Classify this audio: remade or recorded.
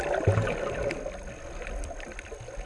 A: recorded